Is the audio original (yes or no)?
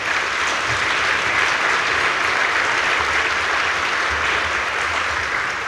yes